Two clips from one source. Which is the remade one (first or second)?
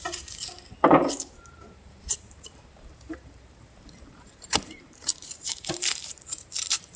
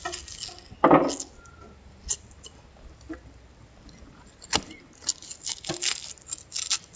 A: first